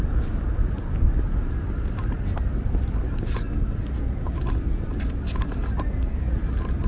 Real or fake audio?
real